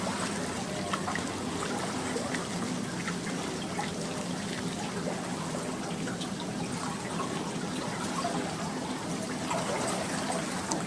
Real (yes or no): yes